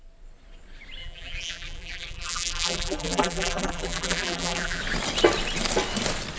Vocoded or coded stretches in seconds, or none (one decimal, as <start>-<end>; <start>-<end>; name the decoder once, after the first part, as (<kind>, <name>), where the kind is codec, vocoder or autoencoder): 1.0-4.8 (vocoder, BigVGAN v2)